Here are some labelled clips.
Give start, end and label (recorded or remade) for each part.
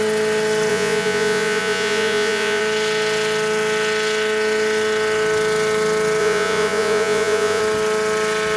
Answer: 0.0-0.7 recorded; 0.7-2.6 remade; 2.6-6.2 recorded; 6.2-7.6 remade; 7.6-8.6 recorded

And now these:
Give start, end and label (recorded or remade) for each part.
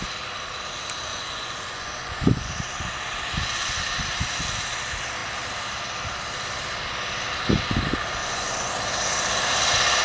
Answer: 0.0-1.1 recorded; 1.1-2.5 remade; 2.5-8.2 recorded; 8.2-8.7 remade; 8.7-10.0 recorded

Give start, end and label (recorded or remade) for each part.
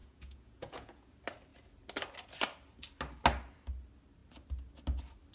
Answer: 0.0-1.1 remade; 1.1-5.3 recorded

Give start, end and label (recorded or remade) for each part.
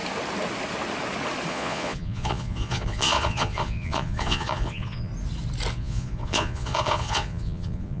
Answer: 0.0-1.5 recorded; 1.5-5.1 remade; 5.1-5.7 recorded; 5.7-8.0 remade